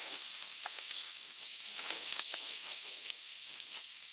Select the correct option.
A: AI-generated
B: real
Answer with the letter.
A